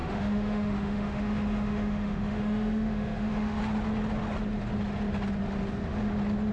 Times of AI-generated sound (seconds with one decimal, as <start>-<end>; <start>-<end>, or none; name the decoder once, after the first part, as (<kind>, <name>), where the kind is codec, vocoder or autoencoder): 0.0-3.6 (autoencoder, DAC-VAE)